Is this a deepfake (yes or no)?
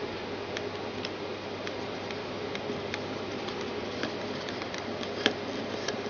no